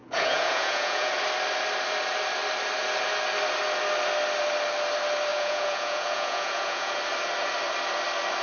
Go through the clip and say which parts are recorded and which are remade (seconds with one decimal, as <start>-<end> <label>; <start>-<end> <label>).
0.0-1.1 remade; 1.1-5.3 recorded; 5.3-7.0 remade; 7.0-8.4 recorded